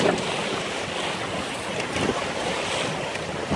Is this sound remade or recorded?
recorded